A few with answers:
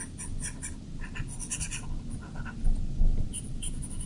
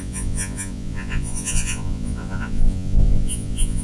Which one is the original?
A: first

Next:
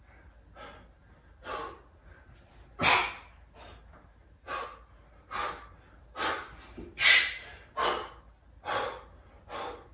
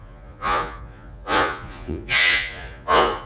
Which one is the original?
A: first